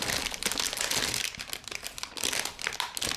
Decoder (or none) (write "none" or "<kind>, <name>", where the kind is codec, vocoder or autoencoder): none